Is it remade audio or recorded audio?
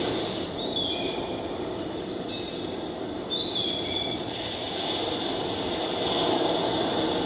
recorded